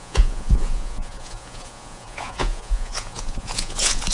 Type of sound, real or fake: fake